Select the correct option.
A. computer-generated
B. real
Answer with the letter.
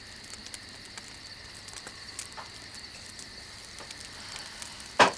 B